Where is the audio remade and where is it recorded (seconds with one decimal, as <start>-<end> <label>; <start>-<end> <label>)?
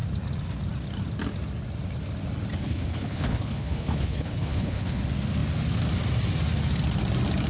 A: 0.0-2.5 recorded; 2.5-5.0 remade; 5.0-7.5 recorded